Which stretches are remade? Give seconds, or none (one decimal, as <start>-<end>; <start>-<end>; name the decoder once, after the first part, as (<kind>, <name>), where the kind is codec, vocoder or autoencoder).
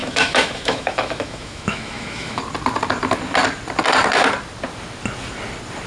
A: 0.0-2.4 (autoencoder, DAC-VAE)